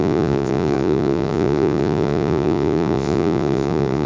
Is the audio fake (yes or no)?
yes